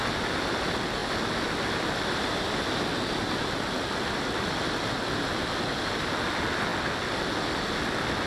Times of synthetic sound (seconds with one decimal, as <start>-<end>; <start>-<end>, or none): none

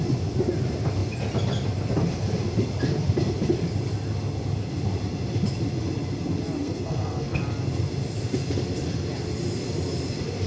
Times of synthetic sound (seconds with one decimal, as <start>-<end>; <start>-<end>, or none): 6.6-7.4

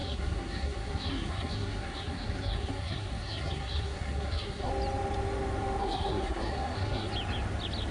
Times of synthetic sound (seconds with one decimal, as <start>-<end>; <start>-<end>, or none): 0.0-4.7; 5.8-7.1

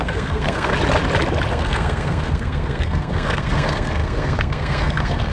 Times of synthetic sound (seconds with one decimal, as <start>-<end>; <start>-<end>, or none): 0.0-0.7; 1.5-5.3

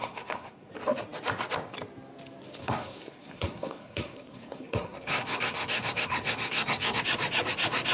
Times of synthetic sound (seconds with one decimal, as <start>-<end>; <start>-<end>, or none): 0.0-0.7; 2.6-7.0

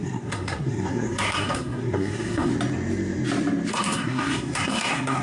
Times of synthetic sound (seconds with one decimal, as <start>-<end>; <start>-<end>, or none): 0.0-2.5; 3.7-5.2